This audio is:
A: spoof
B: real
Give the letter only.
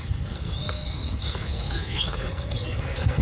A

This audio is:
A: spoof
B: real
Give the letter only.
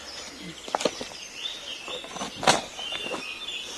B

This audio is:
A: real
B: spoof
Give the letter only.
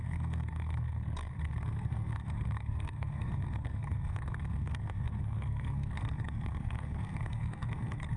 B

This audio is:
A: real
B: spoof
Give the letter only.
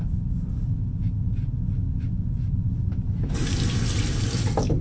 A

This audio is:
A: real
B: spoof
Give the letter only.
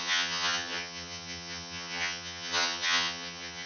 B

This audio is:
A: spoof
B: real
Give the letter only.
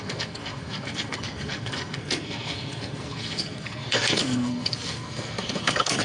A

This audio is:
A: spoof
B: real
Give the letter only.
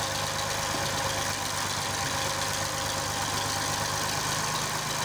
B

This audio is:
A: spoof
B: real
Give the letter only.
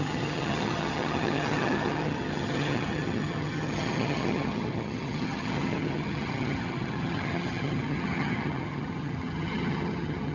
A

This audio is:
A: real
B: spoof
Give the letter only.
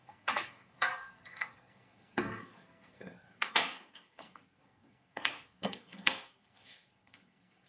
B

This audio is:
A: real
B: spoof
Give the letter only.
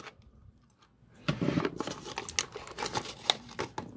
A